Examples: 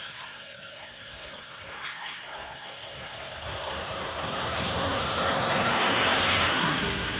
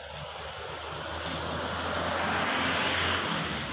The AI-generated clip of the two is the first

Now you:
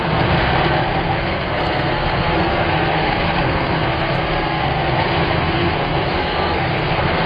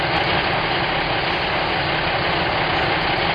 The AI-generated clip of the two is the first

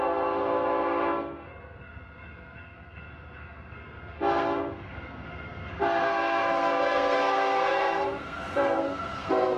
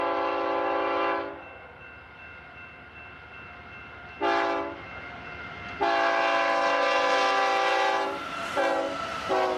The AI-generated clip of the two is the first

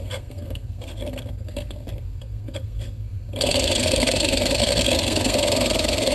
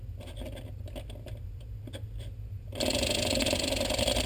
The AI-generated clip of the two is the first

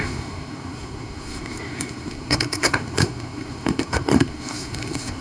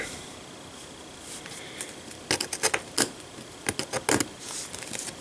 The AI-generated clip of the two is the first